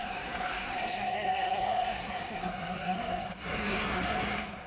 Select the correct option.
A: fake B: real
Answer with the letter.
A